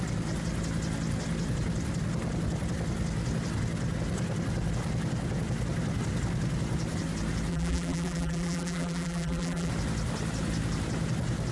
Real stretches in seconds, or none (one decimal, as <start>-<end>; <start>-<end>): 0.0-7.5; 9.7-11.5